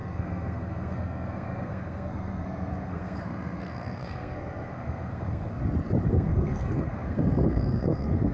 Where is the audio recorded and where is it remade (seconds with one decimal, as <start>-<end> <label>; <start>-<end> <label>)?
0.0-5.6 remade; 5.6-6.1 recorded; 6.1-8.3 remade